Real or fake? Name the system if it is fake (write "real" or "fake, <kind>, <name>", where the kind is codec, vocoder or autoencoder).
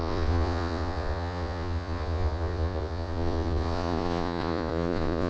fake, vocoder, Vocos